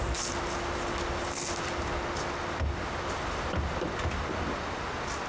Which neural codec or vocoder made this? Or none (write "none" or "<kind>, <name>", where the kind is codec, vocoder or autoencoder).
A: none